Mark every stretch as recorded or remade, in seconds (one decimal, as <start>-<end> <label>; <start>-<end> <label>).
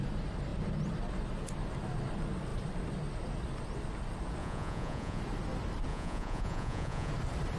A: 0.0-4.4 recorded; 4.4-5.2 remade; 5.2-5.9 recorded; 5.9-7.1 remade; 7.1-7.6 recorded